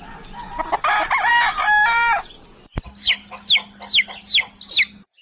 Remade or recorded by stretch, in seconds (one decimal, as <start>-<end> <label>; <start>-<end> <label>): 0.0-5.2 recorded